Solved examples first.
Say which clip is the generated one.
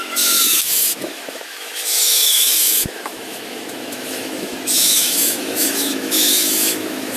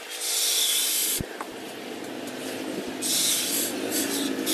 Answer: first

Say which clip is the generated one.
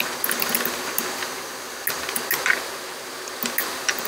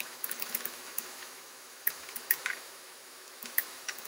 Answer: second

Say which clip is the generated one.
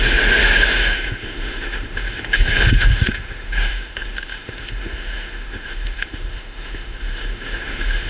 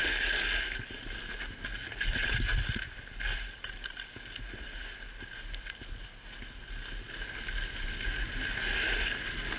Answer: first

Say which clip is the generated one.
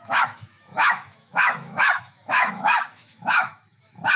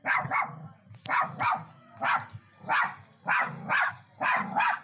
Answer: first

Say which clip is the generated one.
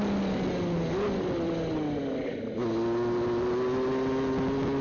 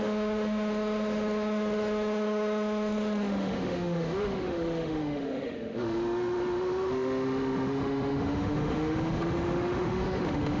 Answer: second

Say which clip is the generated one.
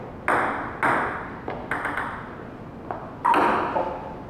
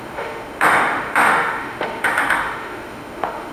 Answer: second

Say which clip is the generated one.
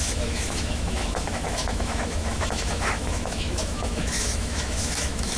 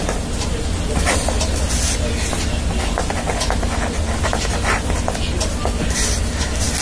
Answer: first